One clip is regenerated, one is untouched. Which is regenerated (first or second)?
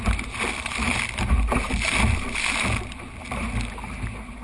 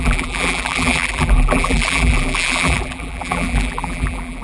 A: second